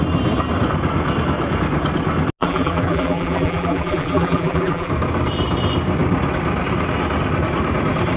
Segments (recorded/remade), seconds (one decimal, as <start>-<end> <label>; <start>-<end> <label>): 0.0-2.4 recorded; 2.4-4.9 remade; 4.9-8.2 recorded